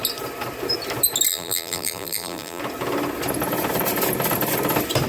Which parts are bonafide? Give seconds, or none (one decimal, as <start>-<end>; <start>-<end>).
0.0-1.3; 2.6-5.1